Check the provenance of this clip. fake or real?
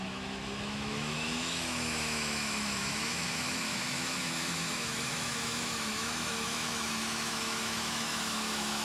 fake